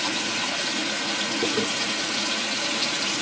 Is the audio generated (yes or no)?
yes